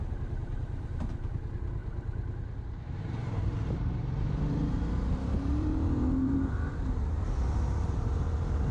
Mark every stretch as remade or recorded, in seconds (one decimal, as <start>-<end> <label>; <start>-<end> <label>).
0.0-1.8 recorded; 1.8-7.0 remade; 7.0-8.7 recorded